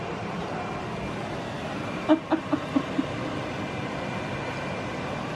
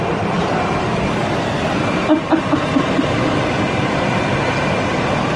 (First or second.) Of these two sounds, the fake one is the second